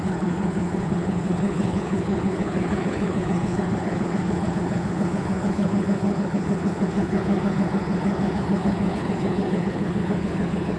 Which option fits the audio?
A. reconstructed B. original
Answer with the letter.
A